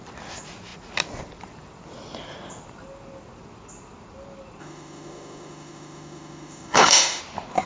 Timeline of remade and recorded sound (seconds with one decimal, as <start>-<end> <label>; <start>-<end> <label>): 0.0-4.6 recorded; 4.6-7.2 remade; 7.2-7.7 recorded